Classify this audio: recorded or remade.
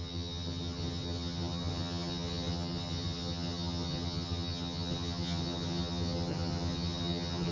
remade